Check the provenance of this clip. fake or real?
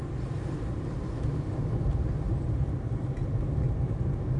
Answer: fake